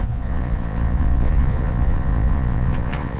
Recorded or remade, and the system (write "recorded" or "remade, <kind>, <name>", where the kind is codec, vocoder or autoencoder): remade, vocoder, Vocos